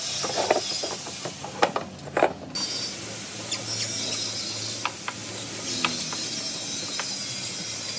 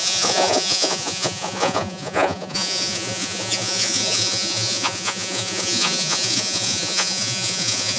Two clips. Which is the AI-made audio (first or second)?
second